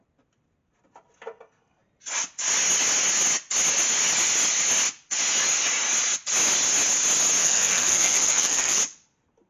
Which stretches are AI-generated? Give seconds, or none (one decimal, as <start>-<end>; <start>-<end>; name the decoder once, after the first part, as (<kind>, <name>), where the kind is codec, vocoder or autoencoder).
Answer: 7.4-8.8 (codec, SNAC)